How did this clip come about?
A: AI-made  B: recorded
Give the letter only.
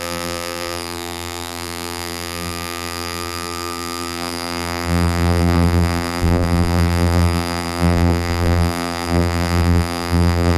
A